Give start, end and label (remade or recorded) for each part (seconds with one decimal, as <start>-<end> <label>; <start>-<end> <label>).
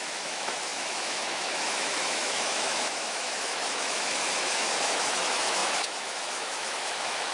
0.0-7.3 remade